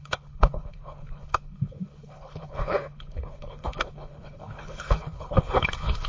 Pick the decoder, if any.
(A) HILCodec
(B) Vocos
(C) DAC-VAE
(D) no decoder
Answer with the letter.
A